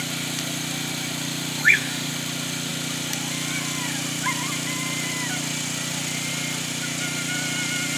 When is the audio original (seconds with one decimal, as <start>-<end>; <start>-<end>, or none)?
0.0-1.6; 2.1-8.0